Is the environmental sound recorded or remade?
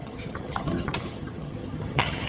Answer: remade